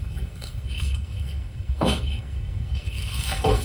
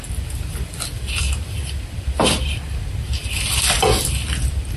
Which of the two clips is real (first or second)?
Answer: second